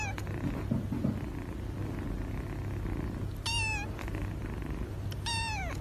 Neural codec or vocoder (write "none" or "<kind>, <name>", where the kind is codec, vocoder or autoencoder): none